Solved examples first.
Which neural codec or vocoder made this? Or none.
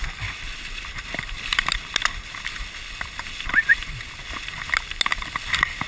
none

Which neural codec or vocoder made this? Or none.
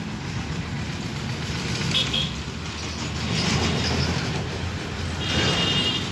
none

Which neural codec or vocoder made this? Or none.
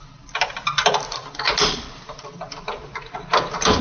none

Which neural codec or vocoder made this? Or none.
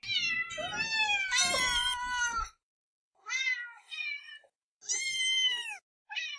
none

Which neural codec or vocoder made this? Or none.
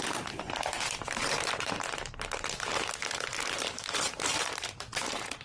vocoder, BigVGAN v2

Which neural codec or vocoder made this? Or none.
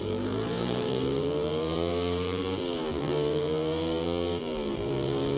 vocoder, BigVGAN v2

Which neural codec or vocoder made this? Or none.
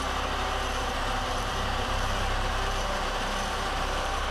vocoder, BigVGAN v2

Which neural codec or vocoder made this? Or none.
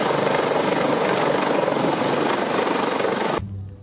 none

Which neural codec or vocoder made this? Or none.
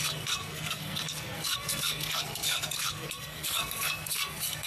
codec, SNAC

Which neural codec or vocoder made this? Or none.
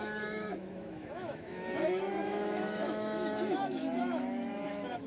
autoencoder, DAC-VAE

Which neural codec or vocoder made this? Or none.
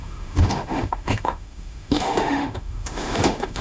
autoencoder, DAC-VAE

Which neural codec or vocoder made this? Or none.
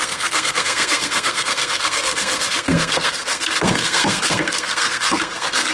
codec, SNAC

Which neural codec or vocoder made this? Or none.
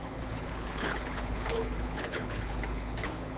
codec, HILCodec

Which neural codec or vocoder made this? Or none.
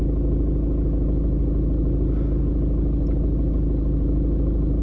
none